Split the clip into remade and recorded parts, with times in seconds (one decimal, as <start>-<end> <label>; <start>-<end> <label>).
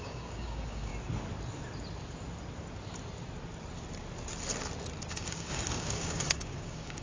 0.0-0.9 remade; 0.9-5.1 recorded; 5.1-7.0 remade